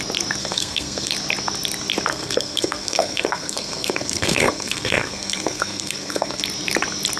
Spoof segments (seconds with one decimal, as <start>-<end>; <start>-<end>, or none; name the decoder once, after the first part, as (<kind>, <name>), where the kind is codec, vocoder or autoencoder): 0.4-1.1 (codec, SNAC); 2.1-6.4